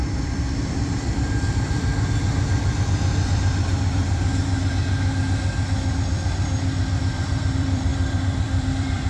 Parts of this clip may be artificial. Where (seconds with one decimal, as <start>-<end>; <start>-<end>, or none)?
0.0-1.9; 7.0-9.1